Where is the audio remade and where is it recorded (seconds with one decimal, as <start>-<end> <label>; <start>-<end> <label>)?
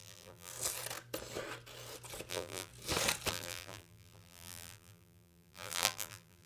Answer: 0.0-0.5 remade; 0.5-2.3 recorded; 2.3-2.7 remade; 2.7-3.3 recorded; 3.3-6.5 remade